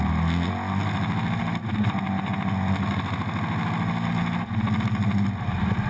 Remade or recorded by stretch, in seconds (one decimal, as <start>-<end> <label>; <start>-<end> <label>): 0.0-5.9 recorded